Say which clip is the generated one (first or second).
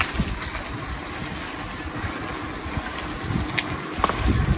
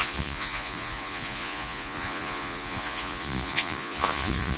second